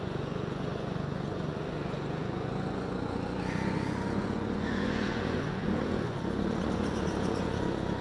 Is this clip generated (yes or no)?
yes